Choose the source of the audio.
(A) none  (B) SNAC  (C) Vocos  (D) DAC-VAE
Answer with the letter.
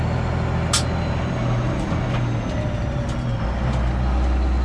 A